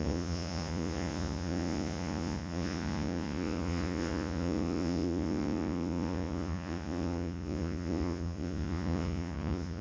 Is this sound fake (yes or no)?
yes